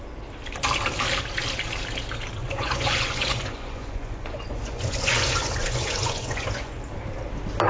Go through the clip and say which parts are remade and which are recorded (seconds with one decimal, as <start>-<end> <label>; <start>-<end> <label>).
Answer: 0.0-2.4 recorded; 2.4-6.8 remade; 6.8-7.7 recorded